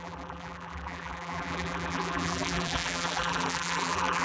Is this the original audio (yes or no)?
no